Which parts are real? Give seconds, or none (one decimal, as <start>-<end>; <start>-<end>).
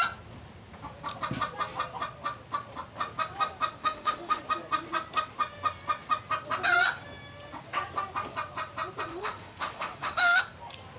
0.0-3.8; 4.4-9.1; 10.4-11.0